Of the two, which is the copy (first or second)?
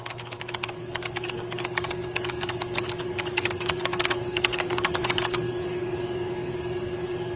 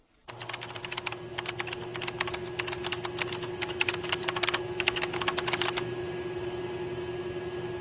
first